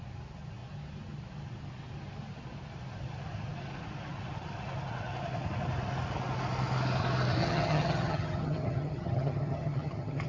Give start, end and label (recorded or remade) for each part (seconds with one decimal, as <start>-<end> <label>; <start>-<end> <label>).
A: 0.0-7.4 recorded; 7.4-10.3 remade